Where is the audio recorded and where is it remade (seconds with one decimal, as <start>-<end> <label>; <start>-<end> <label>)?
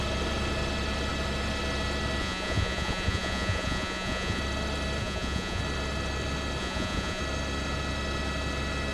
0.0-2.2 recorded; 2.2-4.4 remade; 4.4-5.0 recorded; 5.0-5.6 remade; 5.6-6.6 recorded; 6.6-7.2 remade; 7.2-8.9 recorded